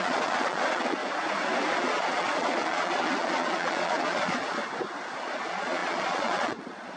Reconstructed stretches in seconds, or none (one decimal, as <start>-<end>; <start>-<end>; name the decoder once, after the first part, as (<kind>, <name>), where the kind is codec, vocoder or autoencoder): 0.0-1.0 (vocoder, Vocos); 1.8-4.6; 5.2-7.0